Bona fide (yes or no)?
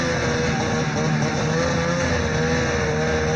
yes